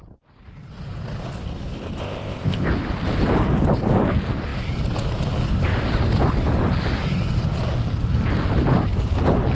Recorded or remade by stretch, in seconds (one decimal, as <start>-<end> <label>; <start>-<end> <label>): 0.0-2.0 recorded; 2.0-2.7 remade; 2.7-9.5 recorded